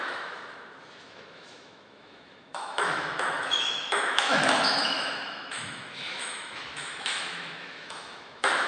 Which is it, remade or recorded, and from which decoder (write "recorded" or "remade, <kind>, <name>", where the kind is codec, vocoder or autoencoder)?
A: remade, autoencoder, DAC-VAE